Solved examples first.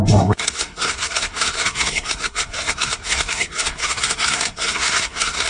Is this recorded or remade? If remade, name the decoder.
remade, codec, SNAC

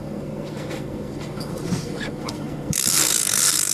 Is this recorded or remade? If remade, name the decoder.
remade, codec, SNAC